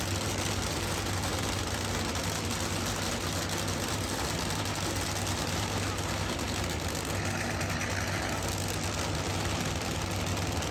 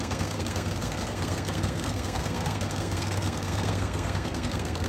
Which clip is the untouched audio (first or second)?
first